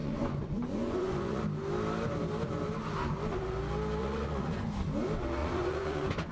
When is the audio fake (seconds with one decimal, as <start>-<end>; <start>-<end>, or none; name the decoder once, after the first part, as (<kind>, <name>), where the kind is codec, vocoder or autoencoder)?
0.0-1.4 (vocoder, Vocos); 4.0-4.7; 5.4-6.3